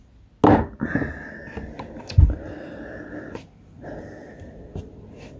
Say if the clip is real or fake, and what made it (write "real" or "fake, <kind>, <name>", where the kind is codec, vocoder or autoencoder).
real